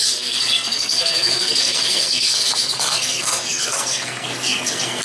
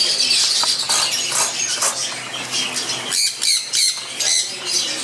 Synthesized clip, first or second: first